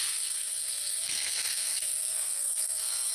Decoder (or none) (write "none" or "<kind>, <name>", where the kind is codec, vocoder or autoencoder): codec, SNAC